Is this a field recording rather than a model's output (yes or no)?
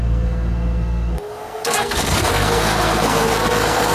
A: no